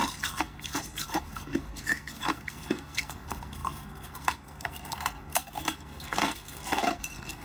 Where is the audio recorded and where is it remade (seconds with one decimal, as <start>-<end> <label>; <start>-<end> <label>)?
0.0-7.4 remade